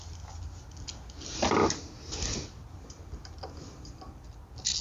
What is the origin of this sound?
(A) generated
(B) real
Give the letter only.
B